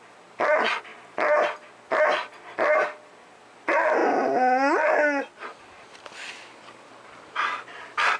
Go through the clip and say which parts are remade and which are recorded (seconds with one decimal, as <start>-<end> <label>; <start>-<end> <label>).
0.0-8.2 recorded